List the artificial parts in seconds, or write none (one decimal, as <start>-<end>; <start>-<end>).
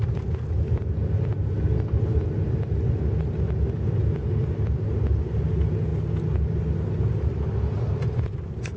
none